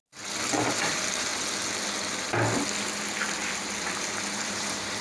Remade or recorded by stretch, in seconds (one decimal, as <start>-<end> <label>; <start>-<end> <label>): 0.0-0.5 recorded; 0.5-1.3 remade; 1.3-4.3 recorded; 4.3-5.0 remade